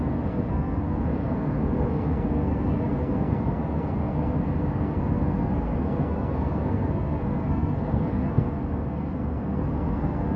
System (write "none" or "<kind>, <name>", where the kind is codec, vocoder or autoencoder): codec, SNAC